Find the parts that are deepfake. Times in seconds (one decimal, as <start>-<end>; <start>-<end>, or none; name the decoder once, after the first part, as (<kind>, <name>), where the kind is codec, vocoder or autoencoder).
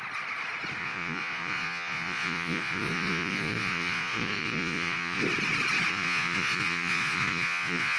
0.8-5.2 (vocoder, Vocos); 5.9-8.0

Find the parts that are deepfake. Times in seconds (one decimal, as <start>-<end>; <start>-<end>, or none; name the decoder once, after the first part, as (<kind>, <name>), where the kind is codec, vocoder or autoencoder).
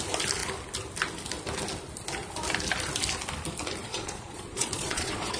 3.8-5.4 (vocoder, Vocos)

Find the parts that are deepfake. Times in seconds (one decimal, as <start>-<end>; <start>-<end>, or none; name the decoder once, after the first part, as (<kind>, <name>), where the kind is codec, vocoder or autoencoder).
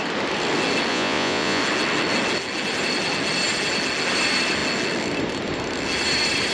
0.9-1.6 (vocoder, Vocos)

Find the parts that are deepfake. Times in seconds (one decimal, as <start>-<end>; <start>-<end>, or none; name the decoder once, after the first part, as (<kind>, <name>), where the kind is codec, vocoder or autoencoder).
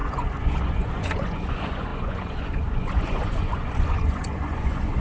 0.0-5.0 (vocoder, Vocos)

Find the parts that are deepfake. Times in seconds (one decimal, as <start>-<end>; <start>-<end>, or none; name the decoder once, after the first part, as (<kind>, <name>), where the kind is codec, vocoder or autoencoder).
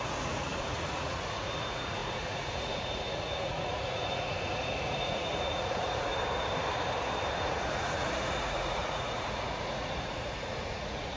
0.0-6.1 (vocoder, Vocos); 7.4-11.2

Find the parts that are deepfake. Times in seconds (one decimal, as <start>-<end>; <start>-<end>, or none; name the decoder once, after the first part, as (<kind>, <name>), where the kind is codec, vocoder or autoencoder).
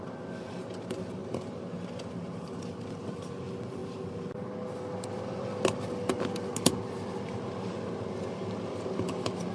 none